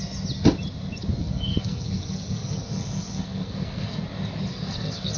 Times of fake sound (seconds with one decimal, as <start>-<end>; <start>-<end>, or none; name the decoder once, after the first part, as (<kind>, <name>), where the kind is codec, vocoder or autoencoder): 1.2-4.0 (codec, SNAC); 4.5-5.2